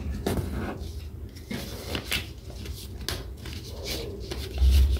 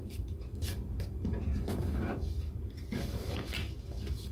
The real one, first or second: first